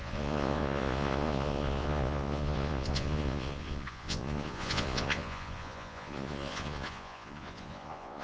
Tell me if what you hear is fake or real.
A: fake